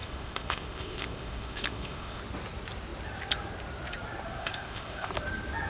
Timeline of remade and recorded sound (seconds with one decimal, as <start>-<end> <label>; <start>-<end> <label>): 0.0-2.2 remade; 2.2-4.4 recorded; 4.4-5.1 remade; 5.1-5.7 recorded